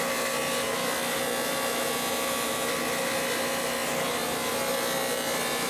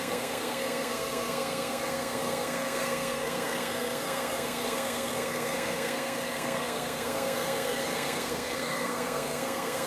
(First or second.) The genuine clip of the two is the first